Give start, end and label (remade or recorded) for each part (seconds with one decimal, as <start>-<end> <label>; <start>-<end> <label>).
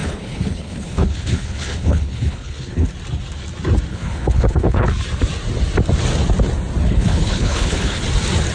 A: 0.0-2.9 remade; 2.9-3.9 recorded; 3.9-4.9 remade; 4.9-6.8 recorded; 6.8-8.0 remade; 8.0-8.5 recorded